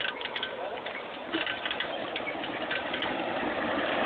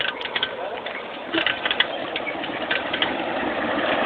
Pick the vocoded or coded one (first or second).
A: second